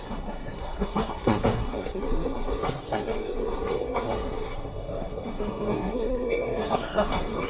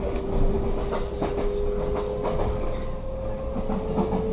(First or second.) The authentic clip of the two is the second